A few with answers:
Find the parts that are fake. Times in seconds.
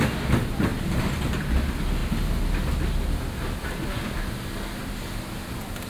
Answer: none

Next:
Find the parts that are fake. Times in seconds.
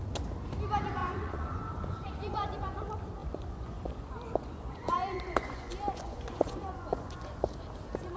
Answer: 1.0-2.7 (vocoder, Vocos); 3.2-7.5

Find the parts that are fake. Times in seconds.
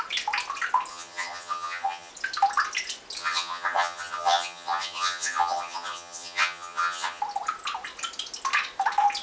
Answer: 0.9-2.1 (vocoder, HiFi-GAN); 3.2-7.2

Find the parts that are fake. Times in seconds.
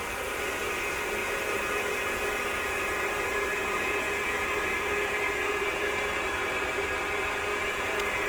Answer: 1.2-6.0 (vocoder, Vocos); 7.5-8.3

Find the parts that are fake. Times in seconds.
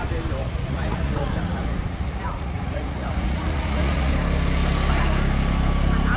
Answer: 0.4-4.1 (vocoder, Vocos)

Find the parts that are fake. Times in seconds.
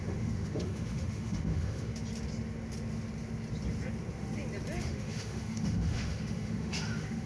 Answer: 0.0-1.9 (autoencoder, DAC-VAE); 4.8-7.3